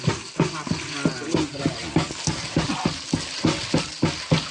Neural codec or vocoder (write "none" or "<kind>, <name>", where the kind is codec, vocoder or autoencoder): none